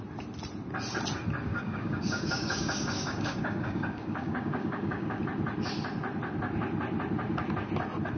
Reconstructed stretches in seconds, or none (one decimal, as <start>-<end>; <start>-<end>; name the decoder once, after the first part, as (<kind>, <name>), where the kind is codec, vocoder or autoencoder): 1.5-5.2 (codec, DAC)